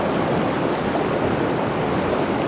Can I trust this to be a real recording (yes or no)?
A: yes